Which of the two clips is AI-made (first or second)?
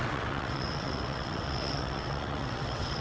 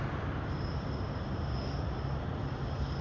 first